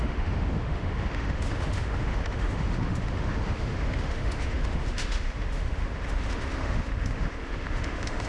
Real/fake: fake